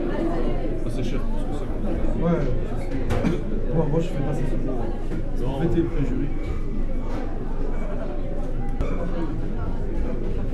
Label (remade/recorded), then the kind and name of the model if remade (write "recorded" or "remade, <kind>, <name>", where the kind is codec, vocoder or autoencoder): recorded